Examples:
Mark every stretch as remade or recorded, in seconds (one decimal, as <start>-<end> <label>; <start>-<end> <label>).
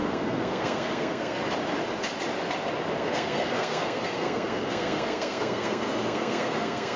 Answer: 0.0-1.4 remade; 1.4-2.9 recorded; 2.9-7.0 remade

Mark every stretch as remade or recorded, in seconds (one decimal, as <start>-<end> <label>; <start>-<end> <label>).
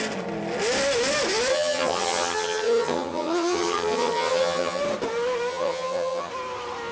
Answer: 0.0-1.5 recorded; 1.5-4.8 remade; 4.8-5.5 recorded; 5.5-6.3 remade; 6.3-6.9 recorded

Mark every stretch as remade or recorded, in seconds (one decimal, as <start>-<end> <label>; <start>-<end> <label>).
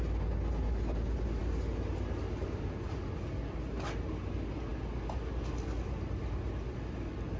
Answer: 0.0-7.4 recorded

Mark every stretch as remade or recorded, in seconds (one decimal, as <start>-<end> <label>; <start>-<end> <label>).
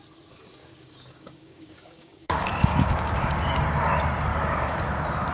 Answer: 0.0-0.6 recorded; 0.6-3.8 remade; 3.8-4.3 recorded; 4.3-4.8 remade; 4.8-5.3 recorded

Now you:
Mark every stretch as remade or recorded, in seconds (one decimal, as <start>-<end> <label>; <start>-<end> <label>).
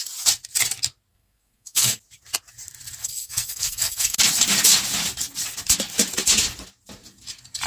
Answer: 0.0-1.1 recorded; 1.1-2.0 remade; 2.0-3.0 recorded; 3.0-4.2 remade; 4.2-7.7 recorded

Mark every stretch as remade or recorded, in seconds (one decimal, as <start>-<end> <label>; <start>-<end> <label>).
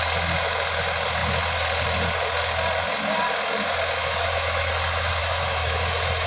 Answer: 0.0-4.0 recorded; 4.0-4.7 remade; 4.7-5.2 recorded; 5.2-5.8 remade; 5.8-6.3 recorded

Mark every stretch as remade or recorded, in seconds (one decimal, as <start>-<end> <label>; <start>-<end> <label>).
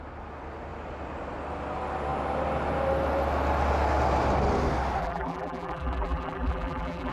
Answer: 0.0-5.0 recorded; 5.0-7.1 remade